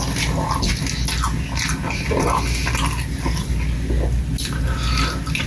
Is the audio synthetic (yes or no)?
no